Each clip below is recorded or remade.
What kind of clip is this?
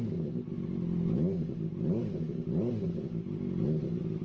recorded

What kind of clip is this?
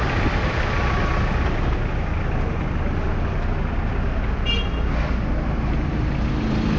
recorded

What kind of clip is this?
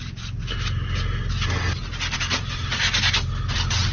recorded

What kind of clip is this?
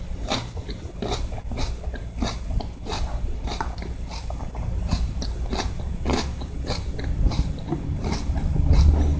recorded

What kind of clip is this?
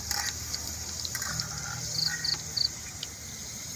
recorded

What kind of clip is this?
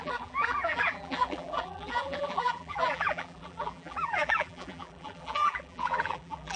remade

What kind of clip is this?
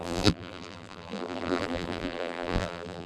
remade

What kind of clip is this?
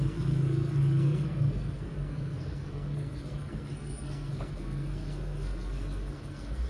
remade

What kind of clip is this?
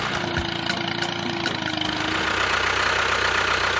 recorded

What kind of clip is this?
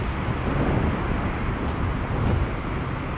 recorded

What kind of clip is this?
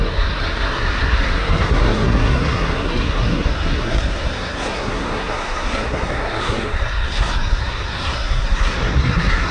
remade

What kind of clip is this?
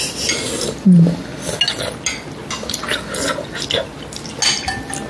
recorded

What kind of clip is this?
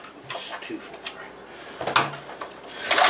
recorded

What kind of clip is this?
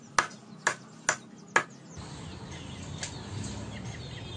recorded